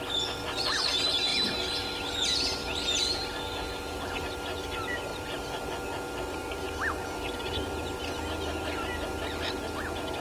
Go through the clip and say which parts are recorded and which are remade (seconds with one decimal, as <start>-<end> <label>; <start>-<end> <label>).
0.0-5.1 recorded; 5.1-5.7 remade; 5.7-10.2 recorded